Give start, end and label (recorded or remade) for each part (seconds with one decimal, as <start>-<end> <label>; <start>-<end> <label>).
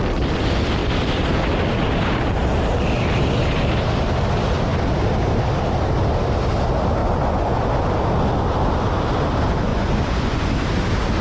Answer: 0.0-7.0 recorded; 7.0-7.7 remade; 7.7-9.7 recorded; 9.7-10.5 remade; 10.5-11.2 recorded